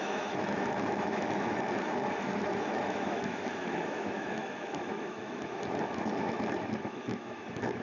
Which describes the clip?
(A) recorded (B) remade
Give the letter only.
B